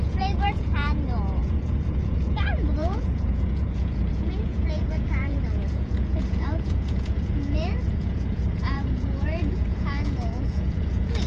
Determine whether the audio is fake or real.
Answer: fake